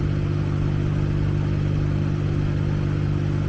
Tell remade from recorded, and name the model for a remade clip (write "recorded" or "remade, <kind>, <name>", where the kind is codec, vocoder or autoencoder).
recorded